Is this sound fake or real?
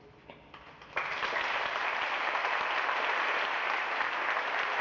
real